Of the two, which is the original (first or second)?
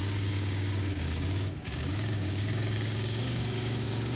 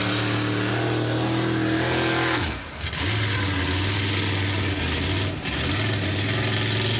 second